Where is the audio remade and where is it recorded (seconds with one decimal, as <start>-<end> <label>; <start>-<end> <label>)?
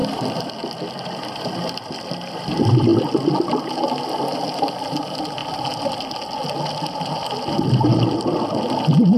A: 0.0-2.9 remade; 2.9-4.7 recorded; 4.7-5.4 remade; 5.4-8.4 recorded; 8.4-9.2 remade